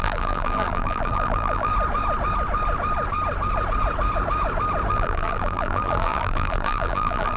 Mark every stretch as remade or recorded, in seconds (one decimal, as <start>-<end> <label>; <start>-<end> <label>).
0.0-1.7 remade; 1.7-4.9 recorded; 4.9-7.4 remade

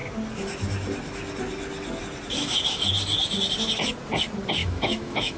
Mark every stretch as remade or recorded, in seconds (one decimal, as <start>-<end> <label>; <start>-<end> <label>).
0.0-2.4 recorded; 2.4-2.9 remade; 2.9-4.6 recorded; 4.6-5.4 remade

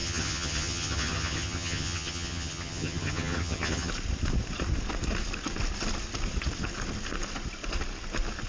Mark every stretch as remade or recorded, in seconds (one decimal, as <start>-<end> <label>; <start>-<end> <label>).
0.0-3.9 remade; 3.9-8.5 recorded

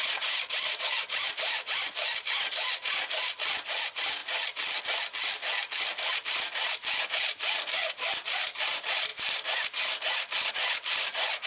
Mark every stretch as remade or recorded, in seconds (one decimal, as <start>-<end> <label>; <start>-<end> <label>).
0.0-4.2 remade; 4.2-6.1 recorded; 6.1-11.5 remade

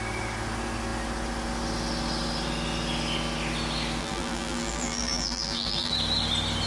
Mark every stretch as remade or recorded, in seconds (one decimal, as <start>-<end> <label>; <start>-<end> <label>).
0.0-4.0 recorded; 4.0-5.9 remade; 5.9-6.7 recorded